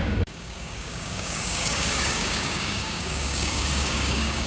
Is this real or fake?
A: fake